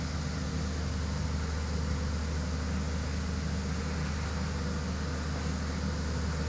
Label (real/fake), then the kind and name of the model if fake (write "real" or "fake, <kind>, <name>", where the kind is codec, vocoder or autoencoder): real